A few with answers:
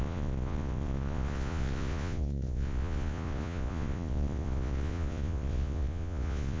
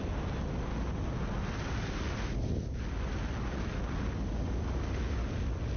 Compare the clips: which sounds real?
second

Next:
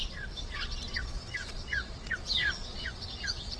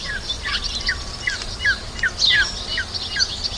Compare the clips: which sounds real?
second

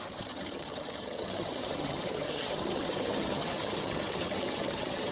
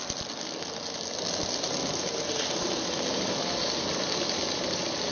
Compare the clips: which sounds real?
second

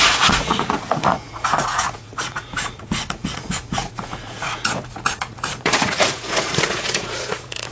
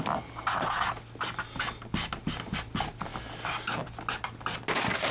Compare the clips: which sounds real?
second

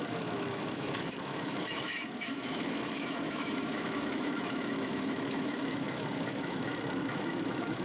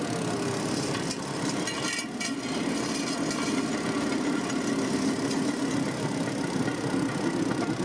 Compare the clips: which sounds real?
second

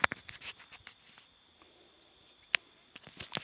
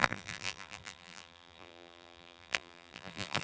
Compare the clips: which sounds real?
first